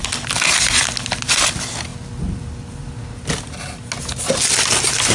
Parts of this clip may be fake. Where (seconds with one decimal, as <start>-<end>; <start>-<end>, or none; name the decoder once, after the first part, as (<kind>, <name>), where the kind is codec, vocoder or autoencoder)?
none